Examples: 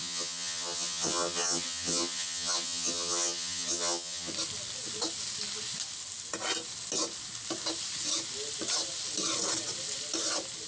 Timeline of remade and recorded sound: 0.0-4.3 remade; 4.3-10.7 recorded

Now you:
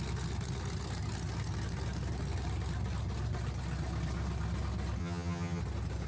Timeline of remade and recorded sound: 0.0-5.0 recorded; 5.0-5.6 remade; 5.6-6.1 recorded